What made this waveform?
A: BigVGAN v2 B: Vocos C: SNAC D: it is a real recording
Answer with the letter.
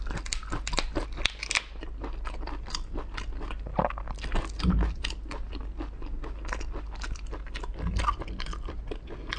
D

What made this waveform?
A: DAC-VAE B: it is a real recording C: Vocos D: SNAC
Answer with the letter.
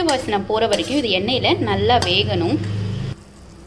B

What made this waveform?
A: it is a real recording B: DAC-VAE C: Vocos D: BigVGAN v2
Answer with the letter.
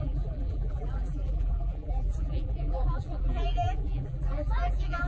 D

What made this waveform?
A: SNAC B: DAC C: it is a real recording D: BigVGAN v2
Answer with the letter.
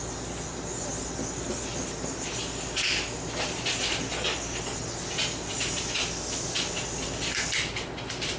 C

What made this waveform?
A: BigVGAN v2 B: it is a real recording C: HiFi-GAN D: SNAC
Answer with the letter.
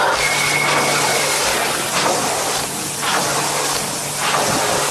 B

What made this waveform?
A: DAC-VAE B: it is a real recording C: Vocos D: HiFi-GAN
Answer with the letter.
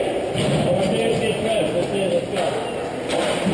B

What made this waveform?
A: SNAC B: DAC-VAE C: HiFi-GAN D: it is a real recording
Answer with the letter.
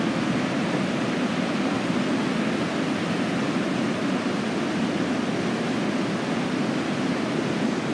D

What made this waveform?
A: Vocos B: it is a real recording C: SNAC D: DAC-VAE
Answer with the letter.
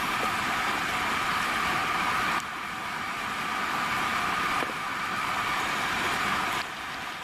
B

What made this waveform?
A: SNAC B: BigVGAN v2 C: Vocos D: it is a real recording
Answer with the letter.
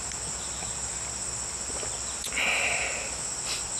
D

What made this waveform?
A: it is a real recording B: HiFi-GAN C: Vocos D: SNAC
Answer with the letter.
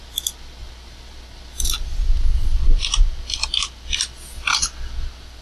A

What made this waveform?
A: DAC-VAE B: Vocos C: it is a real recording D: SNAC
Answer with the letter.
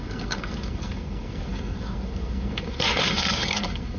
D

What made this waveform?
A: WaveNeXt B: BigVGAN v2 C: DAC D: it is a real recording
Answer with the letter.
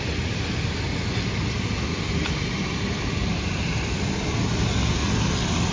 D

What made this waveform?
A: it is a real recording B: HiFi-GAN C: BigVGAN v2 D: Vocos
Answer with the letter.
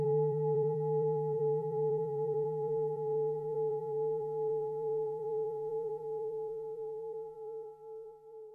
C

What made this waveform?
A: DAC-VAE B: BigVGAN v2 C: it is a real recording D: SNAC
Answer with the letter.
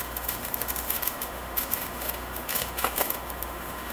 A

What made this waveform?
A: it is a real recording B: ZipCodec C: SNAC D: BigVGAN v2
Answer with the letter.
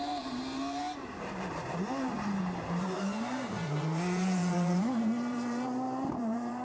D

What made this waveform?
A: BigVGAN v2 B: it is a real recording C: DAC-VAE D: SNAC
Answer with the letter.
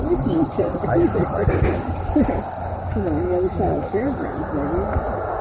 B